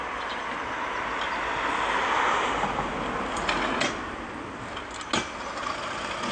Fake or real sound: real